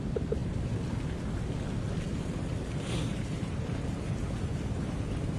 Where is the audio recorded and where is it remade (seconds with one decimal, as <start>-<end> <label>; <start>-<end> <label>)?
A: 0.0-2.1 recorded; 2.1-5.4 remade